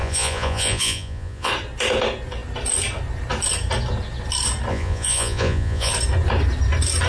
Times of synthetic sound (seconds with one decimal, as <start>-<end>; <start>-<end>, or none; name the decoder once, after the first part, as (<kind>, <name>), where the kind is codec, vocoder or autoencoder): 0.0-1.5 (vocoder, Vocos); 4.7-5.9